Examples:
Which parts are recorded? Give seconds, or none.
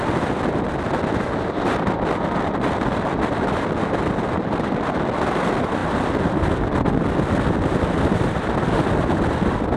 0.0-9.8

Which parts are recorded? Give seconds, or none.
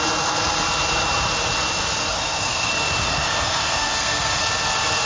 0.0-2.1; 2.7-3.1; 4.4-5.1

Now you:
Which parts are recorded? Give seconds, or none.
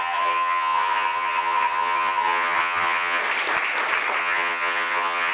3.2-4.2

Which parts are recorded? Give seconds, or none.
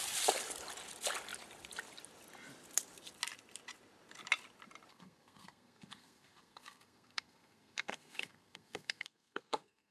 0.0-4.9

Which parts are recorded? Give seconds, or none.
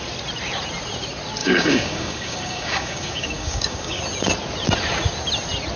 0.0-1.4; 4.0-5.8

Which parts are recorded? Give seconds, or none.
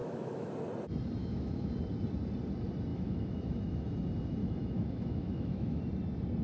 0.5-1.2; 1.7-2.9; 3.9-4.4; 5.8-6.4